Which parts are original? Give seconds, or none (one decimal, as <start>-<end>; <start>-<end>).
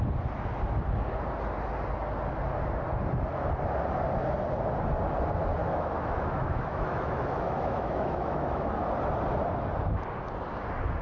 0.0-5.6; 8.7-11.0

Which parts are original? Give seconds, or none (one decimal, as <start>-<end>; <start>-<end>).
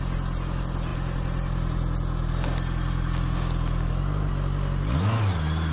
0.0-5.7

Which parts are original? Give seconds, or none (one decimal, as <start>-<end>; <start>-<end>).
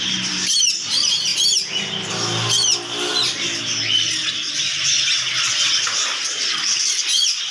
0.0-7.5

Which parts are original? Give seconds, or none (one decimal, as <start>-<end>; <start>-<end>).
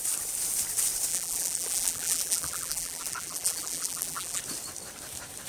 0.0-1.1; 4.4-5.5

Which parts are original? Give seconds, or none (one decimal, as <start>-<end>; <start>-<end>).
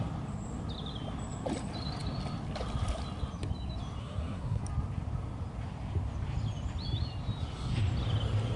0.0-4.0; 4.6-8.6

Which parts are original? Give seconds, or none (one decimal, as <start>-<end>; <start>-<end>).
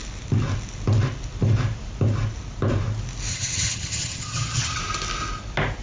0.0-3.3; 4.8-5.8